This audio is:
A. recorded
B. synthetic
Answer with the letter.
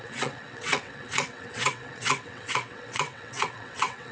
B